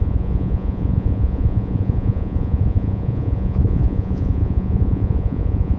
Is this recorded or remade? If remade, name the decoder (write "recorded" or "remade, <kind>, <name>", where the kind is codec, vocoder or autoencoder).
remade, vocoder, Vocos